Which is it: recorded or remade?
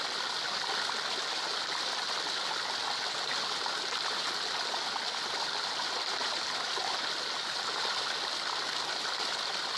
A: recorded